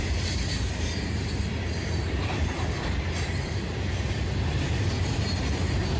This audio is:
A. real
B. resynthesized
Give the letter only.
B